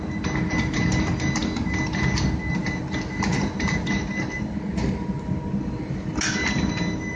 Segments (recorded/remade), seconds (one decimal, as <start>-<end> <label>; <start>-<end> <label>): 0.0-7.2 recorded